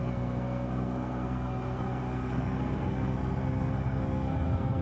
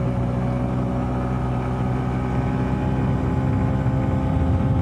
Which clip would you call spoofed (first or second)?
first